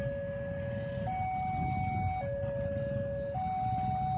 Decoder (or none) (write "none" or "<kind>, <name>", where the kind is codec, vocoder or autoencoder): none